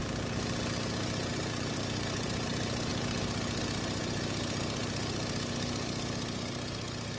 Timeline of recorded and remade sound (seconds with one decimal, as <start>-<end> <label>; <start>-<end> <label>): 0.0-1.2 recorded; 1.2-2.9 remade; 2.9-7.2 recorded